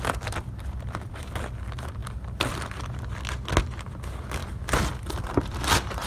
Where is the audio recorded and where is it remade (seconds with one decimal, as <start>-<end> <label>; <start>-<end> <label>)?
0.0-6.1 recorded